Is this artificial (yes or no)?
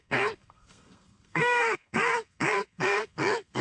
yes